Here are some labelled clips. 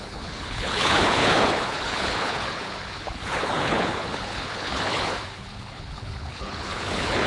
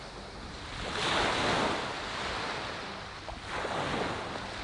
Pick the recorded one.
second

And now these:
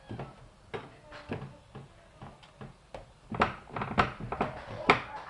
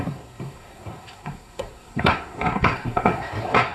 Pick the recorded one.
first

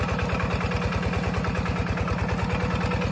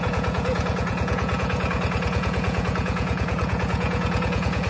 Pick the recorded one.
first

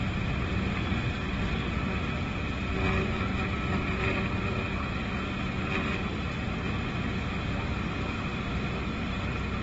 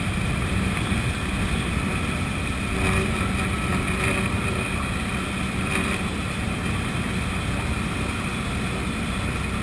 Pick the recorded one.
first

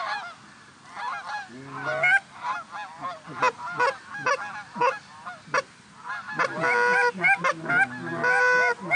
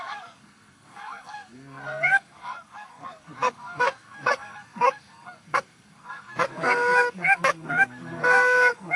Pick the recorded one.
first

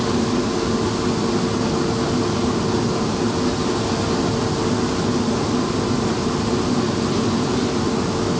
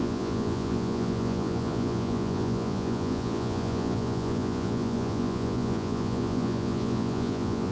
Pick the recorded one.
first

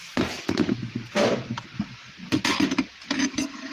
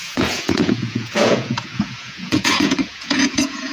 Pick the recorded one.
first